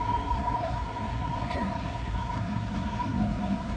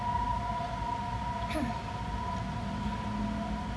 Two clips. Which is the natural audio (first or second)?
second